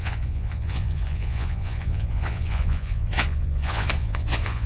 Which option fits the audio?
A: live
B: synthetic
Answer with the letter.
B